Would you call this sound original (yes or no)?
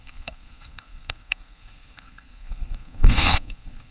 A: no